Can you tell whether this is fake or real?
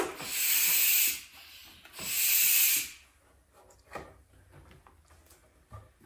real